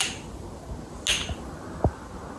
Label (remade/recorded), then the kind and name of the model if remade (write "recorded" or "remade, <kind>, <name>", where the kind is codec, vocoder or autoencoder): recorded